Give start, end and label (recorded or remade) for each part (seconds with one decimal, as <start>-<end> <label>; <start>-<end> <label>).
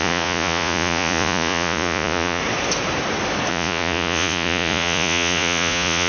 0.0-2.4 remade; 2.4-3.5 recorded; 3.5-6.1 remade